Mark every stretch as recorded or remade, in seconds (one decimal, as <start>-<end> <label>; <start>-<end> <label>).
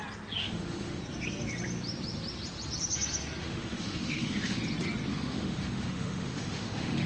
0.0-0.4 recorded; 0.4-1.0 remade; 1.0-3.4 recorded; 3.4-4.6 remade; 4.6-5.1 recorded; 5.1-7.1 remade